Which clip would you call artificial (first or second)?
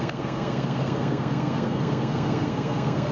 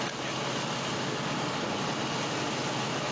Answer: first